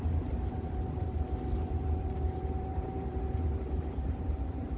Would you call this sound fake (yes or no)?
yes